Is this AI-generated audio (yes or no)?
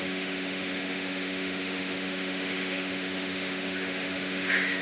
yes